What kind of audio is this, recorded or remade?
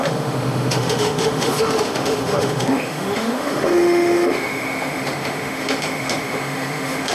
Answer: remade